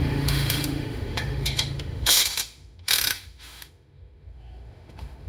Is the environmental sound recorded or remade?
remade